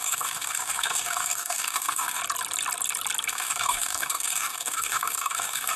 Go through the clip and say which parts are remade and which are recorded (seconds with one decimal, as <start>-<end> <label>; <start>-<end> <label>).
0.0-2.2 remade; 2.2-3.3 recorded; 3.3-5.8 remade

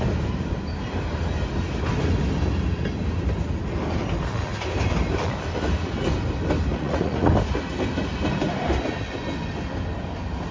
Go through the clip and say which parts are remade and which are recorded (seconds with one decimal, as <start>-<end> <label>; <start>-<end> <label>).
0.0-6.7 recorded; 6.7-7.3 remade; 7.3-10.5 recorded